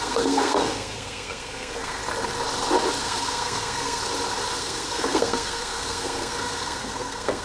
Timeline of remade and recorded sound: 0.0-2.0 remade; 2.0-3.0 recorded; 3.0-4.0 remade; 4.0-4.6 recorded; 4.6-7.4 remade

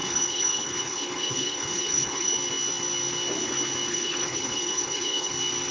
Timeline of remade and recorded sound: 0.0-2.3 remade; 2.3-3.9 recorded; 3.9-5.3 remade; 5.3-5.7 recorded

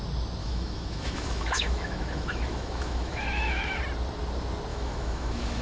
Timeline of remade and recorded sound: 0.0-0.4 recorded; 0.4-3.8 remade; 3.8-4.7 recorded; 4.7-5.6 remade

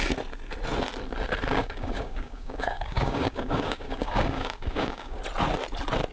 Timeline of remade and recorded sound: 0.0-1.5 recorded; 1.5-5.2 remade; 5.2-6.1 recorded